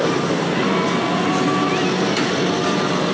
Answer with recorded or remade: recorded